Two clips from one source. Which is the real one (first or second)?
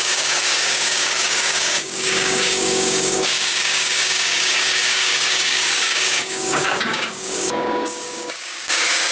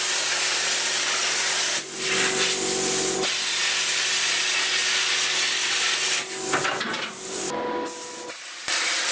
second